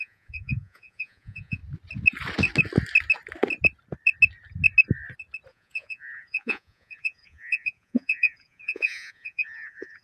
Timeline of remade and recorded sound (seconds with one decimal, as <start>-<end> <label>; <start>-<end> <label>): 0.0-1.6 remade; 1.6-5.5 recorded; 5.5-10.0 remade